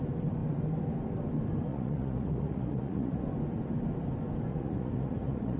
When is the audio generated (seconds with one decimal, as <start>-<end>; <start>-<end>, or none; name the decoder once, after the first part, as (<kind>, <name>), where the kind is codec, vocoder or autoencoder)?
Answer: 1.7-3.2 (vocoder, Vocos); 4.5-5.6